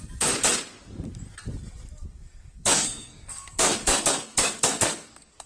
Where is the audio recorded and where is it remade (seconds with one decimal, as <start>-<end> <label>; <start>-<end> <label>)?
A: 0.0-2.1 recorded; 2.1-5.5 remade